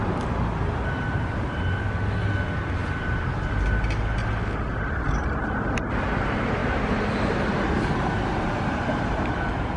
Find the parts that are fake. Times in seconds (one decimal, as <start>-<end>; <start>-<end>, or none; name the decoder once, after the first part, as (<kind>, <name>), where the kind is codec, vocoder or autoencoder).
6.6-9.3 (vocoder, BigVGAN v2)